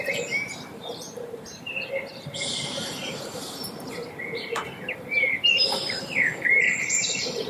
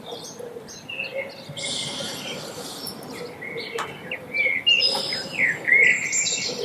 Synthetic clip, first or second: first